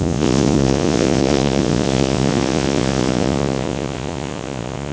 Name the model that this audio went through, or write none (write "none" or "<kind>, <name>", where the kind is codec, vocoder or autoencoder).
vocoder, Vocos